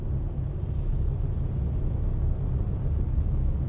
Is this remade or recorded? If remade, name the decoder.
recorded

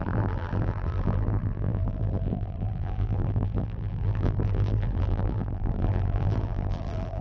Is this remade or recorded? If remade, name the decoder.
remade, vocoder, BigVGAN v2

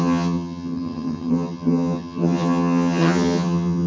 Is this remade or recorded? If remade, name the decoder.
remade, vocoder, HiFi-GAN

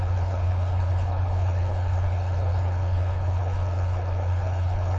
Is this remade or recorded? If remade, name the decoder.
remade, codec, HILCodec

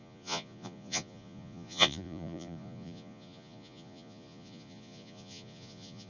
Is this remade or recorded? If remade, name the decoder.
remade, vocoder, Vocos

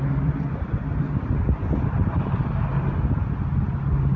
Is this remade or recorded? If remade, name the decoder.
recorded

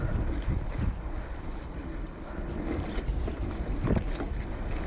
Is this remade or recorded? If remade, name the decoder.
recorded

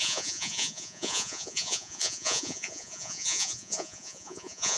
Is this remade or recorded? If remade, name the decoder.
remade, vocoder, Vocos